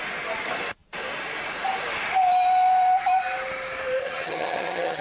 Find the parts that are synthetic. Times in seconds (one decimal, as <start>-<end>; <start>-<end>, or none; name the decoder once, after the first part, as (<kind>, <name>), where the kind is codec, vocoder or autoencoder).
4.0-5.0 (vocoder, HiFi-GAN)